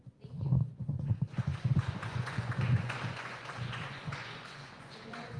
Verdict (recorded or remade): remade